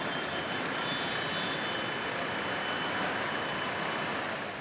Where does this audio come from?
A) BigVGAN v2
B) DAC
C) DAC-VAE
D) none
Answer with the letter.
D